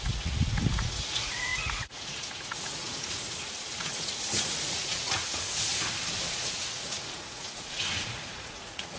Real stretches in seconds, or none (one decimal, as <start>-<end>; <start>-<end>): 5.7-6.3